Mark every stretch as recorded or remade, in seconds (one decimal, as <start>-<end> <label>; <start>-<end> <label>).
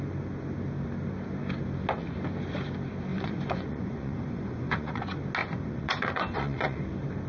0.0-3.1 recorded; 3.1-5.0 remade; 5.0-5.4 recorded; 5.4-6.8 remade; 6.8-7.3 recorded